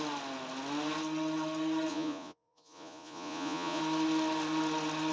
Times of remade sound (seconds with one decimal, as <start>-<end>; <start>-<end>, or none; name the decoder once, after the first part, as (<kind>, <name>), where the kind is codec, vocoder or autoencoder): 1.9-3.8 (vocoder, Vocos)